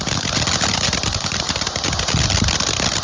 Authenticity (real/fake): real